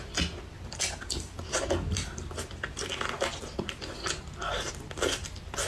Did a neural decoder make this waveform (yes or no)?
no